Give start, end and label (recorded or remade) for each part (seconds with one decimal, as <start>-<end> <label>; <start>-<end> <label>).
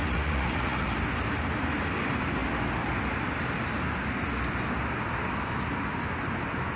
0.0-0.9 remade; 0.9-6.8 recorded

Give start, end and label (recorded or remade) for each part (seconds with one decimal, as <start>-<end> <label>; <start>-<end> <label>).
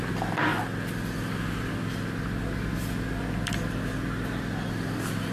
0.0-5.3 recorded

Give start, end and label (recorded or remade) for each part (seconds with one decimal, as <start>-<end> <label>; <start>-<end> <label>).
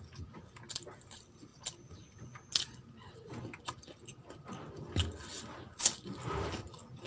0.0-7.1 recorded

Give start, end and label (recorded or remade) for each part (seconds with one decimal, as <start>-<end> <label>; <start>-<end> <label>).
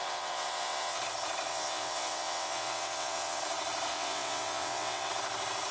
0.0-1.0 remade; 1.0-1.5 recorded; 1.5-3.4 remade; 3.4-3.9 recorded; 3.9-5.1 remade; 5.1-5.7 recorded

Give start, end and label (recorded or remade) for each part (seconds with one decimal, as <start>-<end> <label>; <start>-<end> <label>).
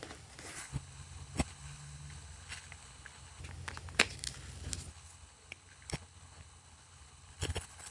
0.0-0.6 recorded; 0.6-3.4 remade; 3.4-4.9 recorded; 4.9-7.9 remade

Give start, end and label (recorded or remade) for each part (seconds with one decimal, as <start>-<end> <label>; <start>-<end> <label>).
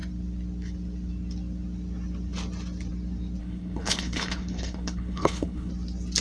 0.0-3.4 recorded; 3.4-5.7 remade; 5.7-6.2 recorded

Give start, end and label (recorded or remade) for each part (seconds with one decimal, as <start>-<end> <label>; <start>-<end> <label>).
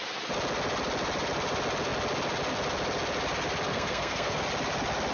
0.0-3.7 recorded; 3.7-4.4 remade; 4.4-5.1 recorded